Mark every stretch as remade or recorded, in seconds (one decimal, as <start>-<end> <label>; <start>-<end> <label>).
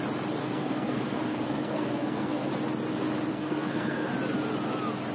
0.0-0.4 recorded; 0.4-2.5 remade; 2.5-3.3 recorded; 3.3-4.1 remade; 4.1-5.1 recorded